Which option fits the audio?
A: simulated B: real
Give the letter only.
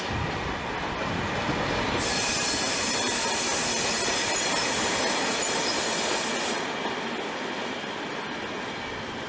B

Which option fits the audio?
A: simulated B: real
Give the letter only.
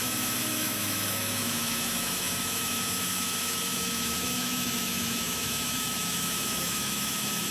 A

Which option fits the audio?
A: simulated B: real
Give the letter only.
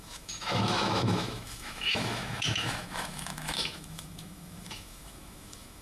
A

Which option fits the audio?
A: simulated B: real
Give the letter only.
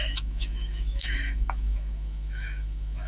A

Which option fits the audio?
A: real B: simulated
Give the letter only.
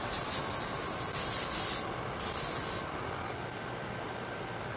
A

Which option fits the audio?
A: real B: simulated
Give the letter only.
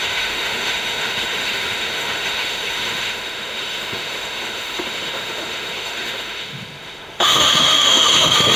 B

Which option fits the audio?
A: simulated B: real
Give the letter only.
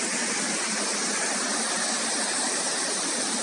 B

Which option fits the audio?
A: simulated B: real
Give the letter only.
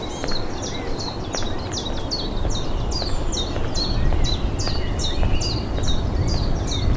B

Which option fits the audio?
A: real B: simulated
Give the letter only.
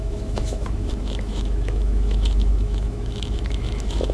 B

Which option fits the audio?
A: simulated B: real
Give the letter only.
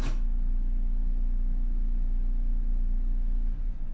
B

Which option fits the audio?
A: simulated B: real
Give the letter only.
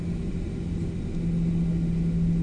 B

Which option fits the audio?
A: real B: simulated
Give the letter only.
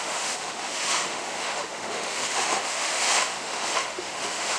B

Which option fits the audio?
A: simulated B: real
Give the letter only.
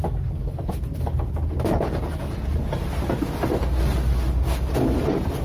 B